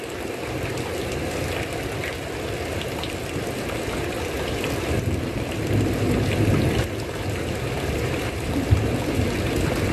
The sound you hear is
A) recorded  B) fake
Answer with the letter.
A